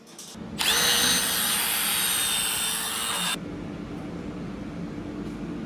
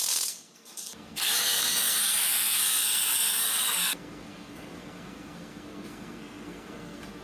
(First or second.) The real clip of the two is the first